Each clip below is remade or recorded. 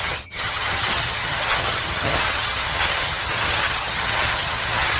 remade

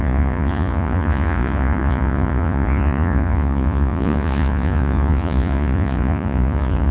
remade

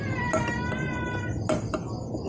recorded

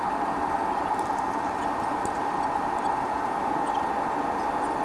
recorded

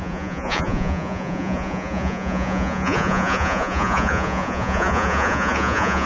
remade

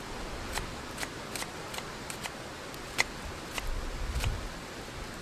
recorded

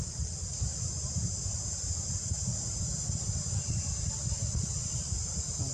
recorded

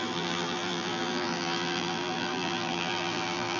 remade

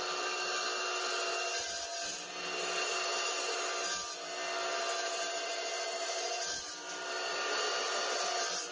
recorded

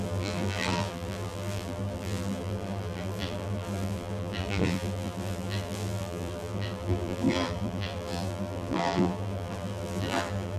remade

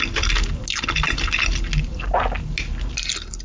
recorded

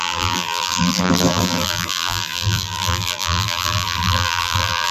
remade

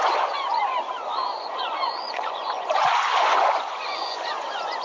remade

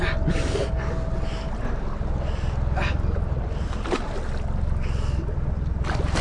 recorded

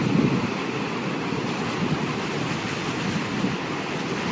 recorded